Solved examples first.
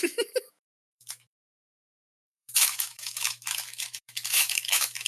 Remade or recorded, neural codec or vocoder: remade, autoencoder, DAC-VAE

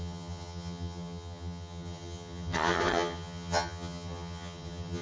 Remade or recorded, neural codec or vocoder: remade, vocoder, HiFi-GAN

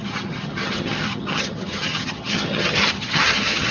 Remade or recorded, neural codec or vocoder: remade, vocoder, HiFi-GAN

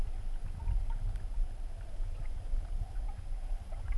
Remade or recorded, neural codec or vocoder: recorded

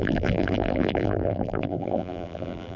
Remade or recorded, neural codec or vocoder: remade, vocoder, BigVGAN v2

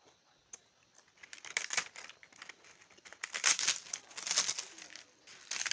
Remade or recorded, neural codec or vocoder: recorded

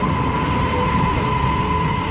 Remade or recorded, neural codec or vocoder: recorded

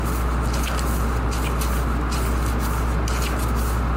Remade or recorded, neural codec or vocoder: recorded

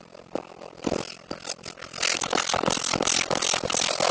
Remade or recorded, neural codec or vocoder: recorded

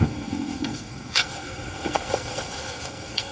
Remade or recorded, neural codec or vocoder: remade, codec, SNAC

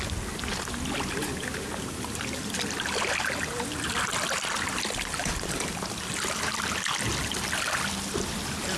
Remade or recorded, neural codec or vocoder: recorded